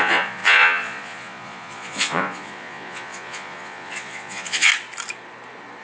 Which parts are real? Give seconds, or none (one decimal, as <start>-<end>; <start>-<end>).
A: 4.7-5.8